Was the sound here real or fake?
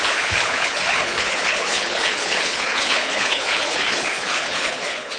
fake